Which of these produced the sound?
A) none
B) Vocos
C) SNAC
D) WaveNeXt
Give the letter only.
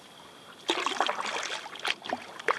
A